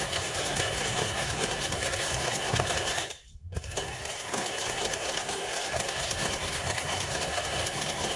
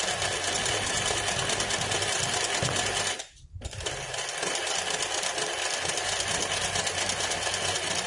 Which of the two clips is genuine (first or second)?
second